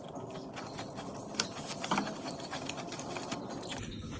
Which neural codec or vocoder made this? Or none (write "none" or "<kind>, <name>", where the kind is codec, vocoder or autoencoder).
none